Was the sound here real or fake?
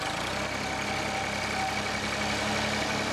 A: real